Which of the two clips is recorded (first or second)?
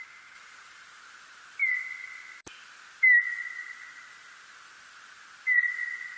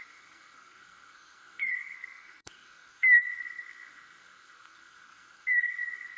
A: first